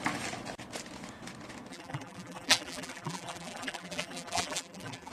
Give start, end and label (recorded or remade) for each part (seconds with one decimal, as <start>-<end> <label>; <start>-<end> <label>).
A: 0.0-1.7 recorded; 1.7-5.1 remade